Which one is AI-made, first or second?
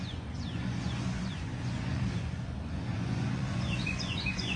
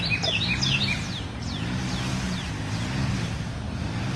first